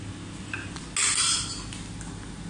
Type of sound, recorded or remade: recorded